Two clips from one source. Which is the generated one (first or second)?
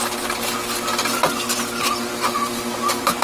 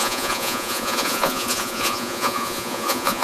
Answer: second